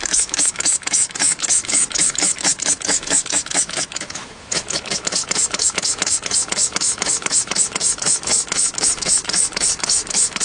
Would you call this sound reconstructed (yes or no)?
yes